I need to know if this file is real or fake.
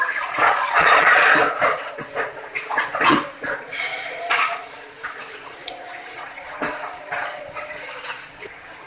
fake